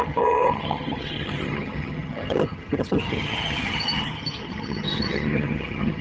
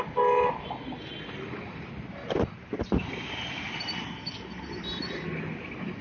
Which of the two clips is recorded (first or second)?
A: second